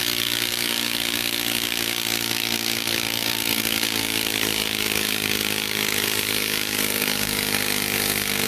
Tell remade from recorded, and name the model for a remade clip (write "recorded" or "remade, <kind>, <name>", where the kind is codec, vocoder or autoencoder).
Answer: remade, codec, DAC